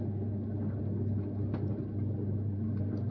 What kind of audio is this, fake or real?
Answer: real